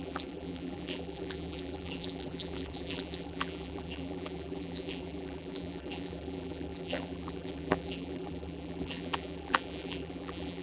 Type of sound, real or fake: fake